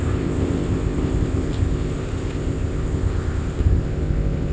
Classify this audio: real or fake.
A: fake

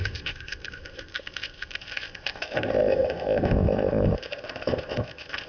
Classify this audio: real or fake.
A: fake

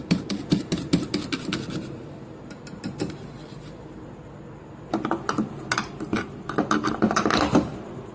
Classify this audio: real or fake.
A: real